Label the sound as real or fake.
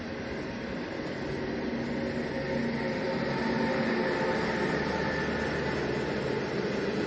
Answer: real